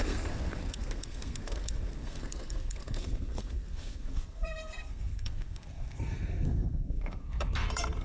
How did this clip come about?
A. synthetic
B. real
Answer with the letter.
A